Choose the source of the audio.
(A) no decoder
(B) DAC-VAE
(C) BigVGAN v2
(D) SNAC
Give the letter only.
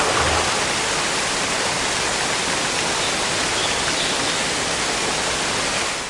A